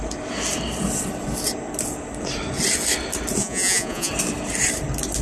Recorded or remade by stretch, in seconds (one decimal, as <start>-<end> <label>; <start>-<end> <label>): 0.0-3.4 recorded; 3.4-4.1 remade; 4.1-5.2 recorded

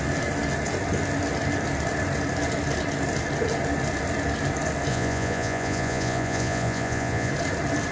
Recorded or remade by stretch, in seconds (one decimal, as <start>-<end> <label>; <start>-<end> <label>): 0.0-4.9 recorded; 4.9-7.3 remade; 7.3-7.9 recorded

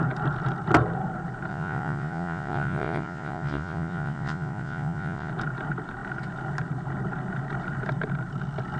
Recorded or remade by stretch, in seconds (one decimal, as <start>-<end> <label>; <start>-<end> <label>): 0.0-1.5 recorded; 1.5-5.3 remade; 5.3-8.8 recorded

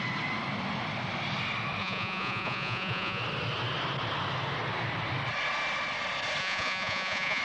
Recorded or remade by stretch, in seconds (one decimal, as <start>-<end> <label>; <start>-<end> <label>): 0.0-1.8 recorded; 1.8-3.2 remade; 3.2-6.4 recorded; 6.4-7.4 remade

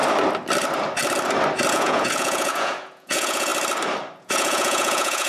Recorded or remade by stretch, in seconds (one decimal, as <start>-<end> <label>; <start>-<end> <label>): 0.0-1.7 recorded; 1.7-3.5 remade; 3.5-4.2 recorded; 4.2-5.3 remade

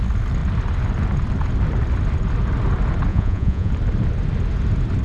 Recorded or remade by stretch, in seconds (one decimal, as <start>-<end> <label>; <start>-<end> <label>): 0.0-3.1 recorded; 3.1-3.7 remade; 3.7-5.0 recorded

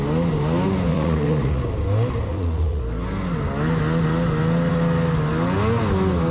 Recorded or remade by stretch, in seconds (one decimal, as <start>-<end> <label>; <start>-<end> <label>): 0.0-0.9 recorded; 0.9-1.6 remade; 1.6-2.3 recorded; 2.3-2.8 remade; 2.8-6.3 recorded

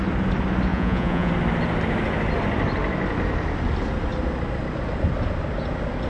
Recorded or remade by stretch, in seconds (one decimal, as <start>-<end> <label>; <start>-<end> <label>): 0.0-0.7 recorded; 0.7-1.3 remade; 1.3-6.1 recorded